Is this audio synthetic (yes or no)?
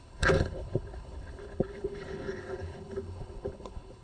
yes